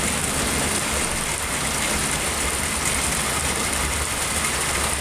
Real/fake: real